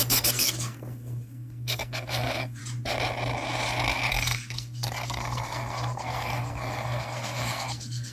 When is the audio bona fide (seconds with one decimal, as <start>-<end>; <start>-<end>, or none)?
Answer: 2.6-4.1